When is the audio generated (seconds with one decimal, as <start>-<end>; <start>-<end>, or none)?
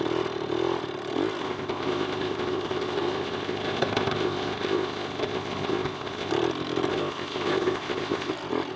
1.4-6.3; 6.9-8.3